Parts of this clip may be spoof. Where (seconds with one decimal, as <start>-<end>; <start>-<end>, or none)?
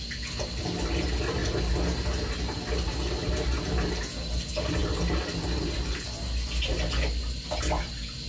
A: none